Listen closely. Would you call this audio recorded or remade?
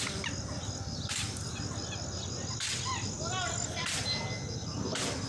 recorded